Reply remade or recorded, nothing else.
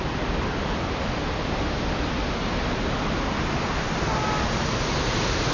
recorded